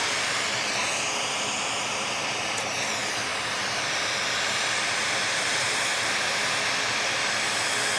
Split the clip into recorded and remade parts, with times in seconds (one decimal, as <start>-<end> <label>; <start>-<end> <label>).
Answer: 0.0-3.3 recorded; 3.3-5.7 remade; 5.7-8.0 recorded